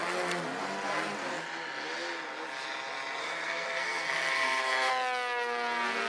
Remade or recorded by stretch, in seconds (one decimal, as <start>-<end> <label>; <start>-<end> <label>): 0.0-3.2 recorded; 3.2-4.9 remade; 4.9-6.1 recorded

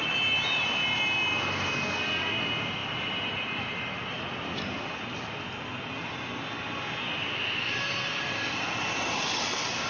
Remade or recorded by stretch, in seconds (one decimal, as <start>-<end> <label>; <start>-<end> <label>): 0.0-9.9 recorded

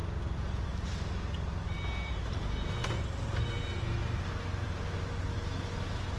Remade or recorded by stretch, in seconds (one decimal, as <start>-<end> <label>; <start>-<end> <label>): 0.0-6.2 recorded

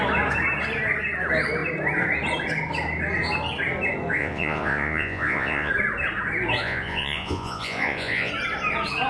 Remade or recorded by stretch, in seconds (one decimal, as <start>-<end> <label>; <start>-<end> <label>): 0.0-4.2 recorded; 4.2-5.7 remade; 5.7-6.6 recorded; 6.6-8.3 remade; 8.3-9.1 recorded

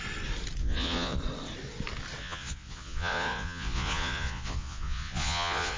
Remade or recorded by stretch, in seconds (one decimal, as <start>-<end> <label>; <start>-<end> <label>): 0.0-0.6 recorded; 0.6-1.2 remade; 1.2-2.2 recorded; 2.2-5.8 remade

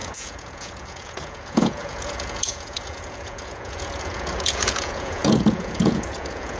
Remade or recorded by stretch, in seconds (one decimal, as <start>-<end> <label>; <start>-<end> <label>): 0.0-6.6 remade

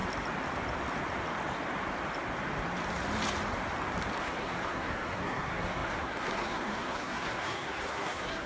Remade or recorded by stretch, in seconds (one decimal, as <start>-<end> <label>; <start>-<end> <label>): 0.0-4.2 recorded; 4.2-8.5 remade

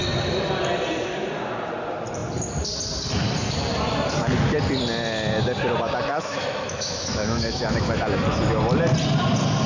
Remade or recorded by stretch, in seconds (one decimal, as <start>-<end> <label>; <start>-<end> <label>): 0.0-6.1 recorded; 6.1-8.0 remade; 8.0-9.7 recorded